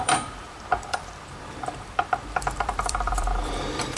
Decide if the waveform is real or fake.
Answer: fake